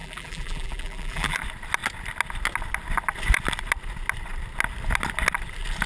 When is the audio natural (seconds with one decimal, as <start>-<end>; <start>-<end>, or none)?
1.4-5.9